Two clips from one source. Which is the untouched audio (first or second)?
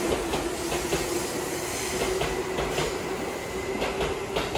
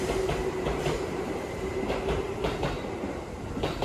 first